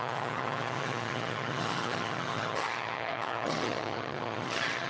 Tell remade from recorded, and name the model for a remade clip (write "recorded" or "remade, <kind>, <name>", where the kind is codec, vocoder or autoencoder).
remade, vocoder, HiFi-GAN